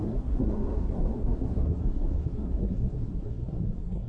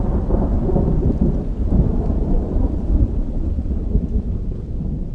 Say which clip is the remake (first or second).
first